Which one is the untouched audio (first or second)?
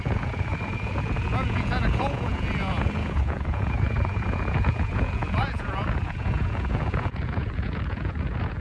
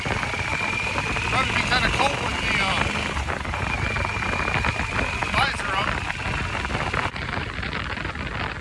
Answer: second